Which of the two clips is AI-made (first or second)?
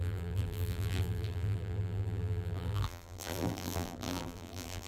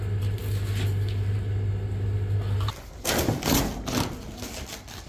first